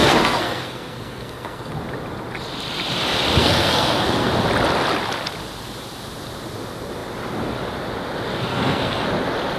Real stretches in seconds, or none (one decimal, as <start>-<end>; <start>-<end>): 1.7-3.4; 4.3-8.5; 9.1-9.6